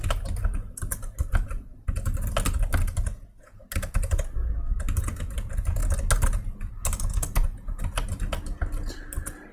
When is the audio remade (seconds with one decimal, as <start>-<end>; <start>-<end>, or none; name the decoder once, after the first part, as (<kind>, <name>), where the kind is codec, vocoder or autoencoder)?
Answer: none